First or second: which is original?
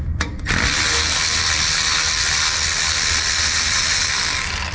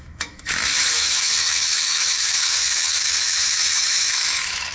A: first